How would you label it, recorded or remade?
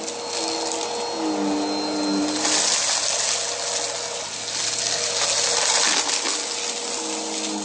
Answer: recorded